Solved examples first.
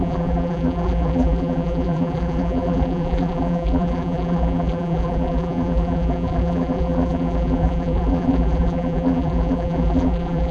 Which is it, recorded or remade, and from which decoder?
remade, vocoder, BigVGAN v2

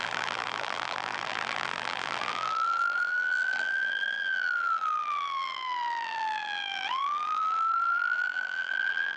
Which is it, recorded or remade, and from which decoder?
remade, vocoder, BigVGAN v2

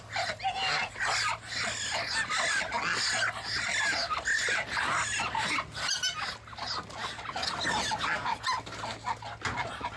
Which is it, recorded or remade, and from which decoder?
recorded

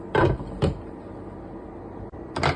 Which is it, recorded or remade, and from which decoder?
recorded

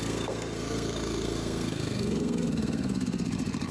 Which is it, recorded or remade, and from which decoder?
remade, codec, SNAC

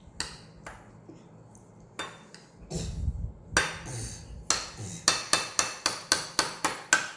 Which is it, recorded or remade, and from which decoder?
recorded